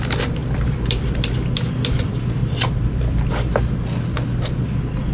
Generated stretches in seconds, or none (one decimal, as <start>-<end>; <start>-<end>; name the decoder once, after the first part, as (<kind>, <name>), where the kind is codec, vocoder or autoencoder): 0.4-1.2 (vocoder, BigVGAN v2); 2.4-3.3